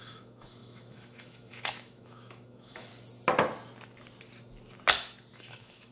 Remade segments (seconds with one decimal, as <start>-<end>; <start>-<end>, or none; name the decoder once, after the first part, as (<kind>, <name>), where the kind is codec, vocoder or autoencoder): 0.0-2.9 (autoencoder, DAC-VAE); 5.3-5.9